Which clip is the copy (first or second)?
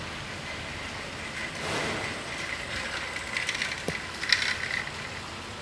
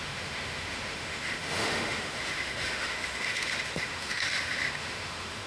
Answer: second